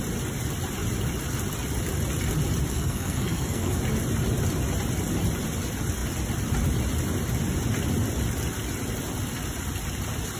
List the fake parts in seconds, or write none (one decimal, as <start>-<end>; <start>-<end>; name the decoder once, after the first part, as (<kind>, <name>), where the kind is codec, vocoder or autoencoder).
2.7-3.8 (codec, SNAC)